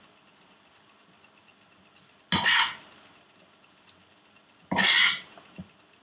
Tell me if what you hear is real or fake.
real